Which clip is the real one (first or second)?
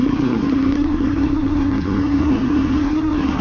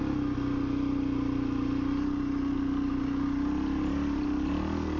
second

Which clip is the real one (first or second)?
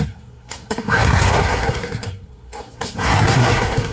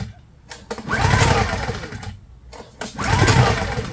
second